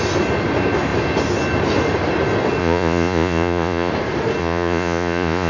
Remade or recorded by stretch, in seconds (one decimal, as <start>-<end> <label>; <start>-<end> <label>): 0.0-2.6 recorded; 2.6-3.9 remade; 3.9-4.4 recorded; 4.4-5.5 remade